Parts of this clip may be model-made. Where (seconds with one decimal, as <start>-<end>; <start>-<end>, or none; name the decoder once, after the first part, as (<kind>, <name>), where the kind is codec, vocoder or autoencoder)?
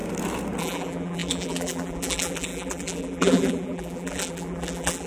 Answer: 0.6-5.1 (vocoder, BigVGAN v2)